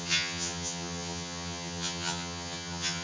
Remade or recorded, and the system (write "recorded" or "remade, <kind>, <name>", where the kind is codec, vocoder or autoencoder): remade, vocoder, HiFi-GAN